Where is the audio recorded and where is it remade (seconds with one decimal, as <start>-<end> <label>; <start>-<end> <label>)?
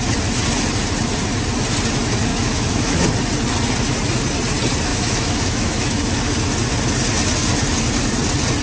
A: 0.0-2.3 recorded; 2.3-3.0 remade; 3.0-4.9 recorded; 4.9-6.2 remade; 6.2-8.6 recorded